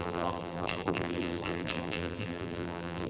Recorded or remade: remade